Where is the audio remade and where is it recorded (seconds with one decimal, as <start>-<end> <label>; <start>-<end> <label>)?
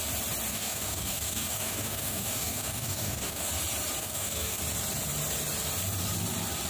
0.0-0.5 recorded; 0.5-3.5 remade; 3.5-4.0 recorded; 4.0-4.6 remade; 4.6-6.7 recorded